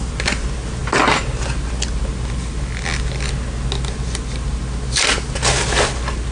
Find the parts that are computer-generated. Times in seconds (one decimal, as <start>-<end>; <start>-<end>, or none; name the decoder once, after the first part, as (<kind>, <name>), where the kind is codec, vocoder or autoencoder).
none